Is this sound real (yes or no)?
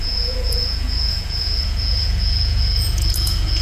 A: no